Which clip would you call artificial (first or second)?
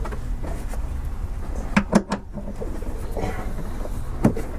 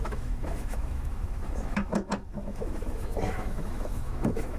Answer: second